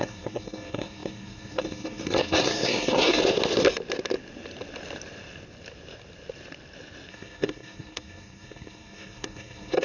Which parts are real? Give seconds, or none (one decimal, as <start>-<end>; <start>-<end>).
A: 3.2-7.1